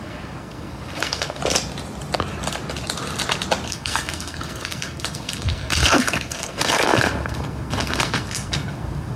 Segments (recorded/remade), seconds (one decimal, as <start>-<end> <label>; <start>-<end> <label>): 0.0-1.4 remade; 1.4-3.7 recorded; 3.7-9.2 remade